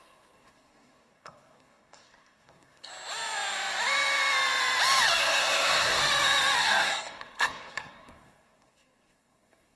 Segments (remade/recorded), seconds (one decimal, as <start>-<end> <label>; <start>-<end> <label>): 0.0-2.9 remade; 2.9-5.2 recorded; 5.2-6.0 remade; 6.0-6.6 recorded; 6.6-9.8 remade